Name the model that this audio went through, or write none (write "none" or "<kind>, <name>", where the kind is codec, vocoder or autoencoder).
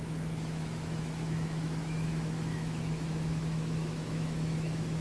autoencoder, DAC-VAE